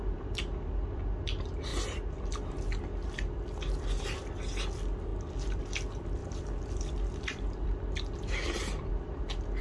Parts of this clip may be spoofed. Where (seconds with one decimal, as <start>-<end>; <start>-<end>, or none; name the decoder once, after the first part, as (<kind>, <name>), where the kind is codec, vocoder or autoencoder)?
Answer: 0.0-1.0 (vocoder, BigVGAN v2); 5.1-5.6; 6.2-9.2